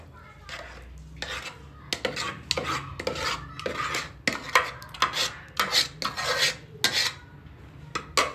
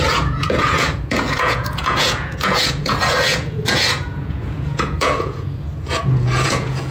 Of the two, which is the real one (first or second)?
first